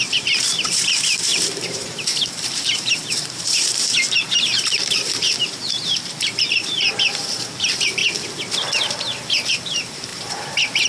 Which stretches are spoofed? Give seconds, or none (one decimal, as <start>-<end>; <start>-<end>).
0.0-8.0; 9.5-10.9